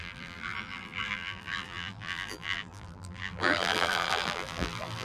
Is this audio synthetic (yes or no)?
yes